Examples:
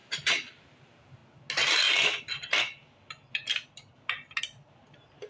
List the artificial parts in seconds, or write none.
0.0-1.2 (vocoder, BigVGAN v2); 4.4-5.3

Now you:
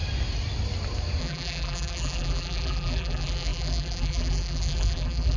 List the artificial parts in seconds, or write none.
1.2-5.4 (vocoder, BigVGAN v2)

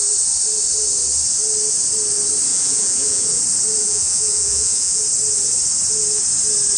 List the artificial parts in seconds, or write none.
2.5-3.4 (vocoder, Vocos); 3.8-5.0

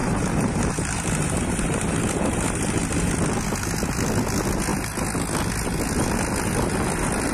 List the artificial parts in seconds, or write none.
0.0-3.1 (vocoder, BigVGAN v2)

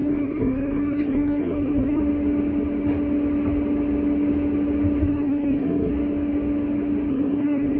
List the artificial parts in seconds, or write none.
0.0-2.0 (codec, SNAC); 5.0-5.9; 7.1-7.8

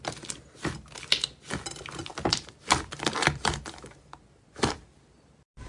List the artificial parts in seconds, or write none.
2.1-5.7 (vocoder, BigVGAN v2)

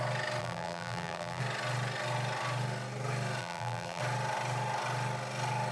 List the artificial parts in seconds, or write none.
0.4-1.4 (vocoder, BigVGAN v2); 3.4-4.0

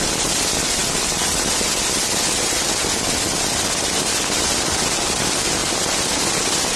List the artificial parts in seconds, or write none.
none